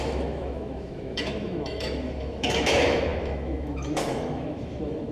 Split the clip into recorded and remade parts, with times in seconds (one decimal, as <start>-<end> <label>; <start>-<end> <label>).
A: 0.0-5.1 remade